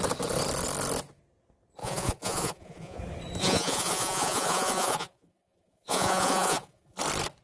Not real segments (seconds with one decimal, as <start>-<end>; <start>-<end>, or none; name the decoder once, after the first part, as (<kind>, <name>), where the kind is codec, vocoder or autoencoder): 1.8-3.0 (vocoder, Vocos); 3.4-7.0